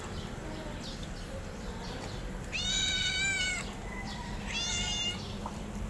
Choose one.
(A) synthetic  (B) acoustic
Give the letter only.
A